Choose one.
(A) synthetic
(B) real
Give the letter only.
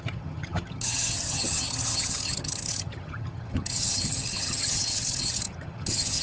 A